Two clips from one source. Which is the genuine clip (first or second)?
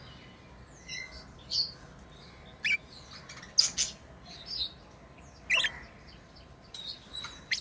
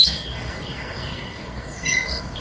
first